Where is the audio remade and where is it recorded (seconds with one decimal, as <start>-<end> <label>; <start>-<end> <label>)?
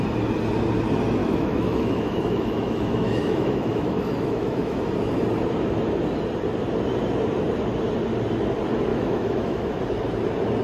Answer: 0.0-1.2 recorded; 1.2-4.8 remade; 4.8-8.9 recorded; 8.9-9.8 remade; 9.8-10.6 recorded